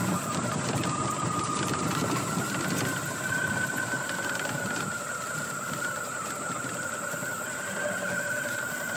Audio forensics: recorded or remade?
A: recorded